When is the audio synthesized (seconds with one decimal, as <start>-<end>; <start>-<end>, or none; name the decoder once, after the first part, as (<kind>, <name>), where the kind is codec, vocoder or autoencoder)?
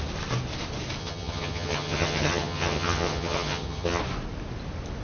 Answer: 1.0-4.0 (vocoder, HiFi-GAN)